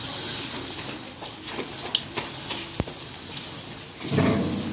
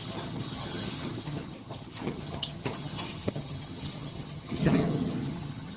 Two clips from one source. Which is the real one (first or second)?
first